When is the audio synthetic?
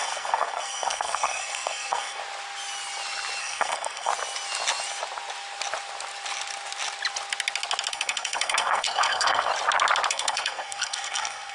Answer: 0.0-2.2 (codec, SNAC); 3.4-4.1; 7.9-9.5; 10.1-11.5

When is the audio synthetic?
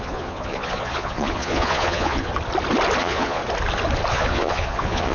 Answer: 0.0-2.3 (vocoder, Vocos); 3.0-3.4; 4.1-5.1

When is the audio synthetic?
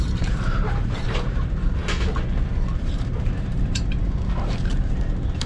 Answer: 0.0-1.8 (vocoder, BigVGAN v2); 2.8-5.5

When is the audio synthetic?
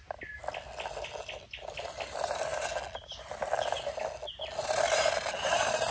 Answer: none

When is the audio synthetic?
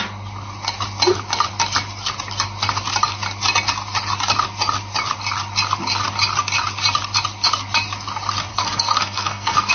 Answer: 8.5-9.7 (codec, SNAC)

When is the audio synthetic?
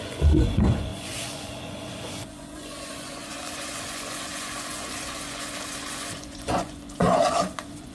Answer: 0.0-7.9 (vocoder, Vocos)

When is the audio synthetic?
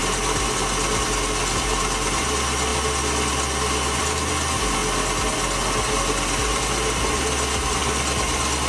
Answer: none